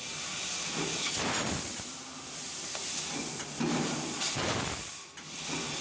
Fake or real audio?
real